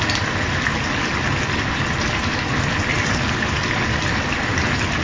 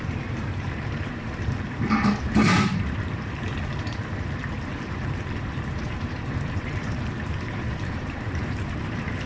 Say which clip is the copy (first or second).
second